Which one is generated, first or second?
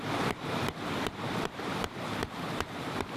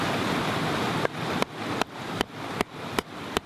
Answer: first